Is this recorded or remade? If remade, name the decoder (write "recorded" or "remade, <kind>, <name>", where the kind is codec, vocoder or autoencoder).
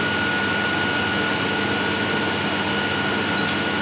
recorded